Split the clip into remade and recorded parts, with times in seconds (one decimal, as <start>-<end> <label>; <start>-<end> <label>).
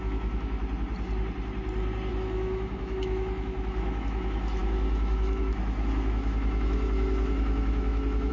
0.0-0.6 remade; 0.6-2.1 recorded; 2.1-8.3 remade